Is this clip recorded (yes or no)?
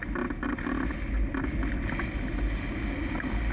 yes